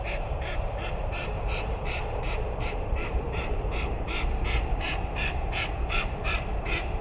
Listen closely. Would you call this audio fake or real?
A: fake